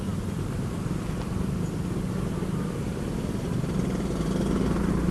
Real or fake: real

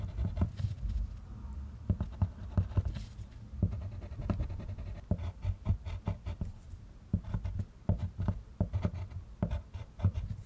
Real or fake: real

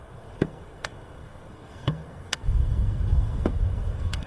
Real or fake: fake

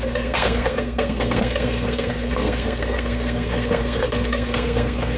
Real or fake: fake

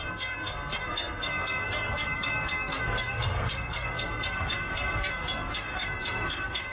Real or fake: fake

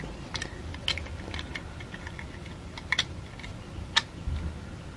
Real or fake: real